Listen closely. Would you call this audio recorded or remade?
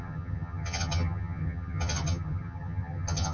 remade